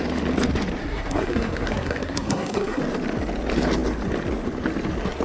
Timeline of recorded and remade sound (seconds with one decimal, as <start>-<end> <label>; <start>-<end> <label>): 0.0-0.8 recorded; 0.8-2.8 remade; 2.8-5.2 recorded